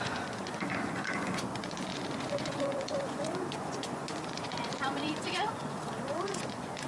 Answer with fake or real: fake